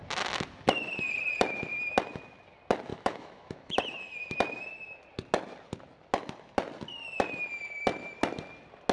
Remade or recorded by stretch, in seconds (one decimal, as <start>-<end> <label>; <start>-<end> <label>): 0.0-2.9 recorded; 2.9-3.8 remade; 3.8-8.9 recorded

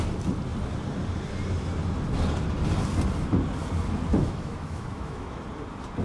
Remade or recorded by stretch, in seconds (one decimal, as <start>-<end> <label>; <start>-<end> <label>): 0.0-4.1 recorded; 4.1-5.4 remade; 5.4-6.0 recorded

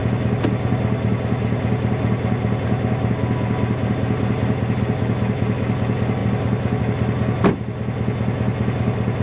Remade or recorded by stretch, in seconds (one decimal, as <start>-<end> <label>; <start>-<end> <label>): 0.0-9.2 recorded

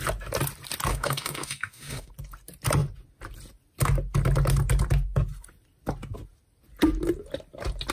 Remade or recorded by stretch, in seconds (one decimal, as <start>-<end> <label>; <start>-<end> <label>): 0.0-0.9 recorded; 0.9-2.1 remade; 2.1-7.9 recorded

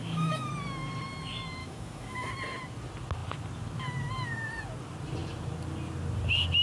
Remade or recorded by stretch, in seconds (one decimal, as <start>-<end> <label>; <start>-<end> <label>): 0.0-0.5 remade; 0.5-1.6 recorded; 1.6-2.3 remade; 2.3-6.6 recorded

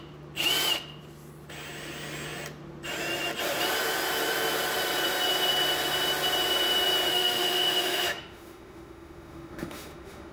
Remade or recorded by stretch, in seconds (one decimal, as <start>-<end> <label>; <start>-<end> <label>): 0.0-7.1 recorded; 7.1-10.3 remade

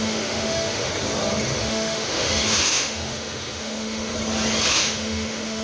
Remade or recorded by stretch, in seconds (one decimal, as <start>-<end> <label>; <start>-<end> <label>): 0.0-0.9 remade; 0.9-1.6 recorded; 1.6-4.1 remade; 4.1-4.7 recorded; 4.7-5.6 remade